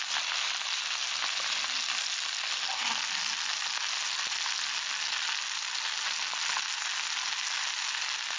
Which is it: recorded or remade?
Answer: recorded